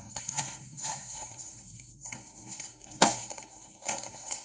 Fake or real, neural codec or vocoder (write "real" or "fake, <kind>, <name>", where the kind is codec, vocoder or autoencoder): fake, codec, SNAC